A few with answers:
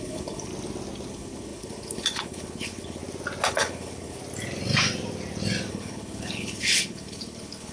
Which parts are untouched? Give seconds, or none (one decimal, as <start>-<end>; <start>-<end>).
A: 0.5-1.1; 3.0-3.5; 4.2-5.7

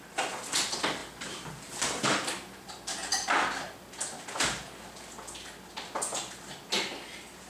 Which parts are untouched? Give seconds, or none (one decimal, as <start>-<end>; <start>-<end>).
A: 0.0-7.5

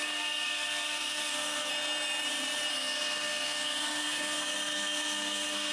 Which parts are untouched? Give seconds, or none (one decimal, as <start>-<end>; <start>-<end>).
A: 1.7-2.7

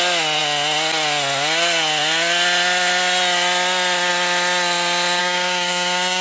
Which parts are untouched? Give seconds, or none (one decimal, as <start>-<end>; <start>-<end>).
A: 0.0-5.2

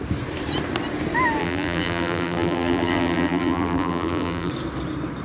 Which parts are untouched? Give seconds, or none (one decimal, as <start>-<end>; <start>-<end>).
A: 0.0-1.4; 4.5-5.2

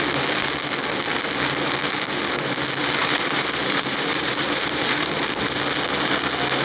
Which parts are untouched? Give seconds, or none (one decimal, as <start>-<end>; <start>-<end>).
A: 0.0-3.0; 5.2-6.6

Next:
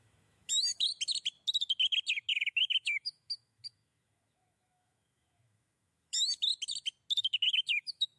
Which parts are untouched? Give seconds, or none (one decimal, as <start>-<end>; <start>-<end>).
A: 0.9-2.3; 6.5-7.5